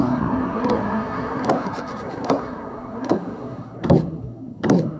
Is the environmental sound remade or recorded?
remade